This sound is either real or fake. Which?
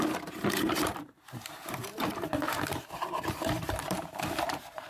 fake